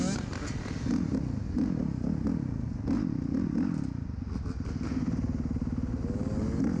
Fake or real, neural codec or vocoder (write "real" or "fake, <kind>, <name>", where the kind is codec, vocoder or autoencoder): real